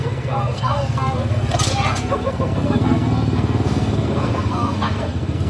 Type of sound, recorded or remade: remade